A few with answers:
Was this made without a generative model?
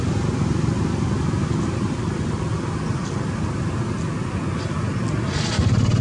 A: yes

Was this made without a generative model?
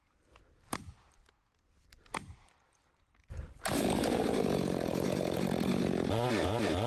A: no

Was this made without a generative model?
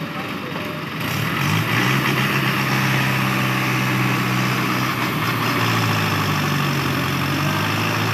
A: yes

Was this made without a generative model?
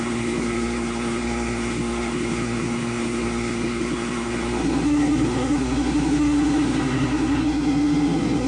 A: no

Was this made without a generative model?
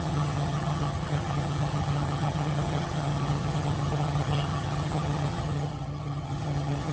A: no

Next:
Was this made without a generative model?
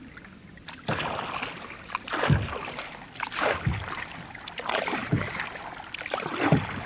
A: yes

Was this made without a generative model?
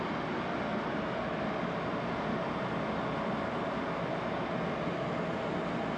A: yes